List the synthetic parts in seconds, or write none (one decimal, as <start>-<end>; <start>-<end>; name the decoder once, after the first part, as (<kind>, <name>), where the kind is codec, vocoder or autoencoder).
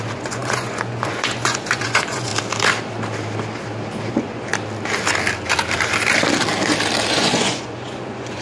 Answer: 0.0-2.3 (vocoder, Vocos); 4.1-4.5; 7.1-8.4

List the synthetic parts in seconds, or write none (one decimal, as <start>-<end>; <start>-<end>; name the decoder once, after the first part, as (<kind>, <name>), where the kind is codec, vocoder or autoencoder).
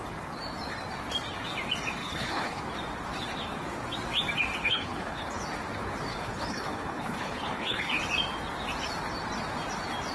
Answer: 2.0-2.6 (codec, HILCodec); 4.6-5.3; 6.1-8.0